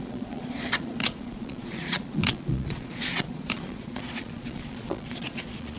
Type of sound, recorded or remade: remade